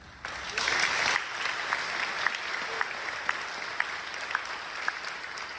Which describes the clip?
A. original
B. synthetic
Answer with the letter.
A